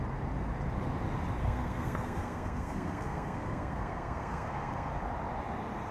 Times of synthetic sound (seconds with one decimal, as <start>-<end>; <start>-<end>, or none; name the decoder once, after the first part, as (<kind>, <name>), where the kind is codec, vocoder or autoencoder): 1.4-4.9 (codec, SNAC)